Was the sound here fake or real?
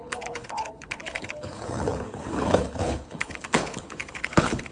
fake